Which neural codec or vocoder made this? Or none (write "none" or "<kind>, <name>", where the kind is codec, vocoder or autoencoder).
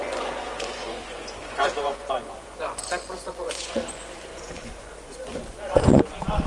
vocoder, Vocos